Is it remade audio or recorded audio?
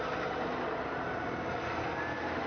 recorded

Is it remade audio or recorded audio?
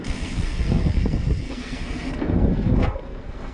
remade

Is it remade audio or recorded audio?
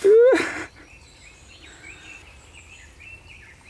recorded